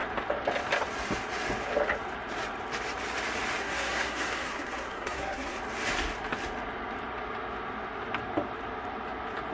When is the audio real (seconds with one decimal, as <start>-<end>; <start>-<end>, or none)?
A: 0.0-3.6; 5.6-9.5